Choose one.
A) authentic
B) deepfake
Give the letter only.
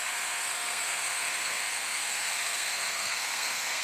B